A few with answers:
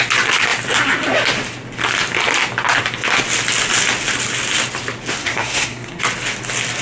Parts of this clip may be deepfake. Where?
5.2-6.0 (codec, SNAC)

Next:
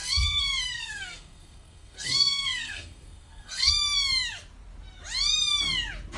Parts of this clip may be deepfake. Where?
0.0-3.7 (codec, SNAC)

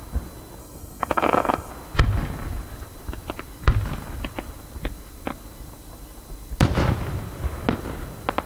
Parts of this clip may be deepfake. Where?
0.6-1.7 (codec, SNAC)

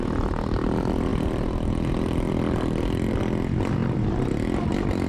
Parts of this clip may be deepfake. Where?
1.1-3.2 (vocoder, BigVGAN v2); 3.8-5.1

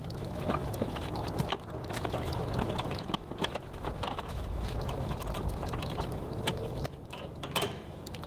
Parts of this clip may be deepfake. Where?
0.0-8.3 (autoencoder, DAC-VAE)